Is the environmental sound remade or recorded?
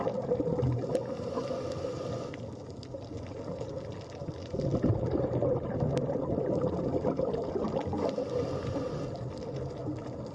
recorded